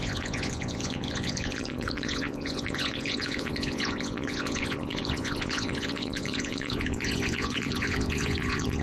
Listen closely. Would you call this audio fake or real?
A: fake